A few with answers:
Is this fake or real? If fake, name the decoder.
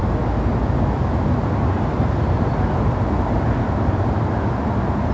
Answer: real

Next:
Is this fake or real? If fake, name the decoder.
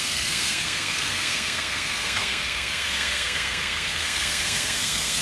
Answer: fake, codec, SNAC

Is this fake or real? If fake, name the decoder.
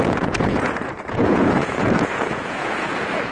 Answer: fake, vocoder, Vocos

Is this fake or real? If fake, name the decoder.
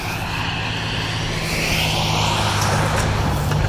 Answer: real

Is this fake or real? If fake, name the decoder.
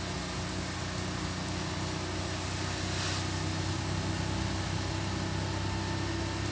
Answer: real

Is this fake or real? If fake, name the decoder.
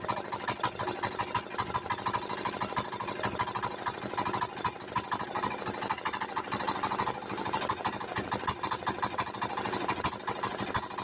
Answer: real